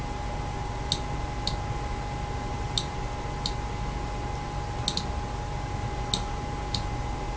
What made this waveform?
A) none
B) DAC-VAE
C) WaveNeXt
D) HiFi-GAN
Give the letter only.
A